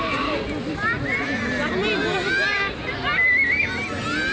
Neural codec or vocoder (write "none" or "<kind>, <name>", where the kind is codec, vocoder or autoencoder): none